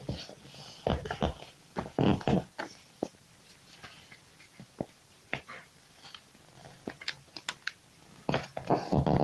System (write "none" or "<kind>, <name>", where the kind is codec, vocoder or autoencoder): none